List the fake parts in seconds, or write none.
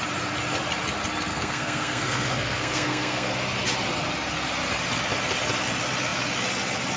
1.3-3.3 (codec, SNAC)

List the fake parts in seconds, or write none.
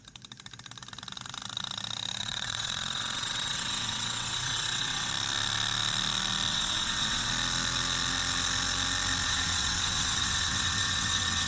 2.2-5.1 (vocoder, WaveNeXt); 6.5-7.3; 9.2-11.5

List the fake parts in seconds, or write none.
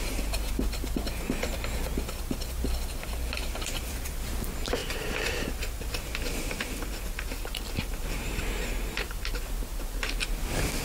3.4-4.3 (vocoder, BigVGAN v2); 4.8-9.4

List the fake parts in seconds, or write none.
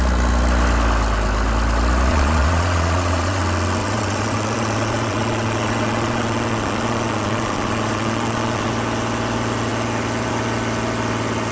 2.1-3.4 (vocoder, Vocos); 3.8-8.7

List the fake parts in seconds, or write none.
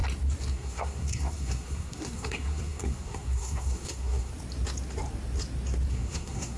0.5-4.3 (codec, SNAC); 5.9-6.6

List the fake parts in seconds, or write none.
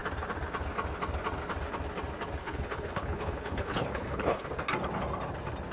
2.4-4.5 (codec, HILCodec)